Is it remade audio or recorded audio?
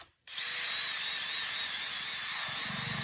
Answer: recorded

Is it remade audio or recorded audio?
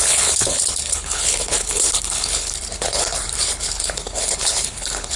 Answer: remade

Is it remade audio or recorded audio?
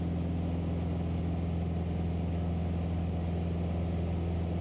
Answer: recorded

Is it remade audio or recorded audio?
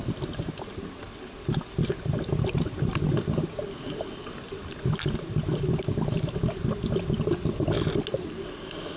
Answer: recorded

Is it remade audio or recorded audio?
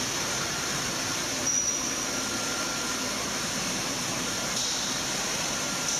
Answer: remade